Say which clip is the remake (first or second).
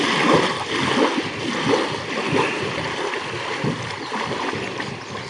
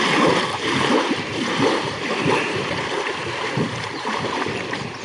second